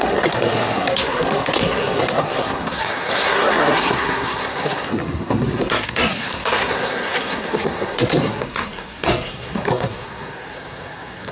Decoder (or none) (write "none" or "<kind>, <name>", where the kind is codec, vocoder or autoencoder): codec, SNAC